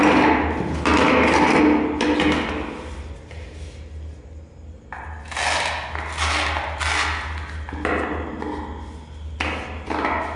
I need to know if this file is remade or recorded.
recorded